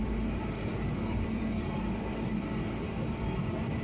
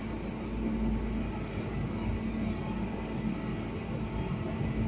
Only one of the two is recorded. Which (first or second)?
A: second